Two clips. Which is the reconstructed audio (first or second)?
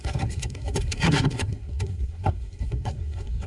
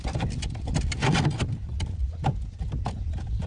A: first